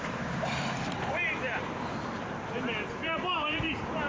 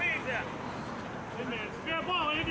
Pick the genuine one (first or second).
second